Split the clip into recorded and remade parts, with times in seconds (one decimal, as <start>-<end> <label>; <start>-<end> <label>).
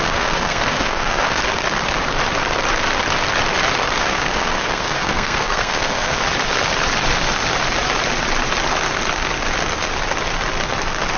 0.0-1.4 remade; 1.4-4.0 recorded; 4.0-6.2 remade; 6.2-11.2 recorded